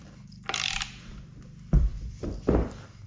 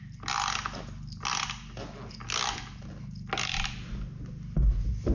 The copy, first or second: first